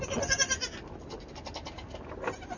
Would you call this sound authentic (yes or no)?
yes